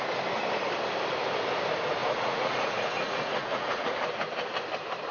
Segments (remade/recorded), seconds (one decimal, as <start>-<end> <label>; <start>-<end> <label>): 0.0-2.0 recorded; 2.0-3.8 remade; 3.8-5.1 recorded